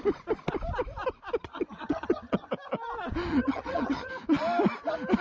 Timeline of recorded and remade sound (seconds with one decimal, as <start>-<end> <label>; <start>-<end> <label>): 0.0-1.4 recorded; 1.4-2.5 remade; 2.5-3.3 recorded; 3.3-4.1 remade; 4.1-5.2 recorded